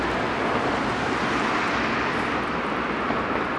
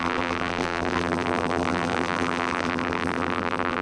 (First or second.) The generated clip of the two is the second